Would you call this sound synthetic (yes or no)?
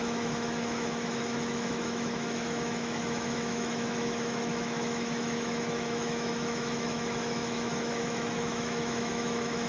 yes